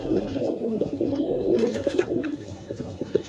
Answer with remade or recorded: remade